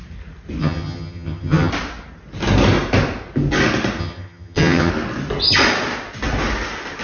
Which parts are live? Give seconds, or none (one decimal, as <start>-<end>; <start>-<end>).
0.0-0.6; 1.7-4.0; 4.9-7.0